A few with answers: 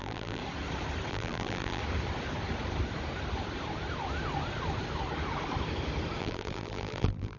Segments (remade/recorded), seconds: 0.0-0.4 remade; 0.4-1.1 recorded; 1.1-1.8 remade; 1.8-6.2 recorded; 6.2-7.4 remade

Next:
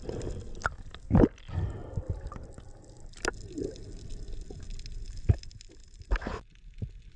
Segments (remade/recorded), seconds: 0.0-1.8 recorded; 1.8-3.6 remade; 3.6-7.2 recorded